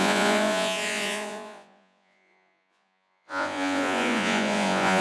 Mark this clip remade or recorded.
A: remade